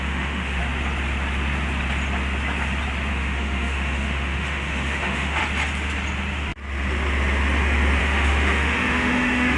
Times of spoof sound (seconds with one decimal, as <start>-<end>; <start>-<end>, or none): 0.0-0.6; 3.1-5.4; 8.0-9.6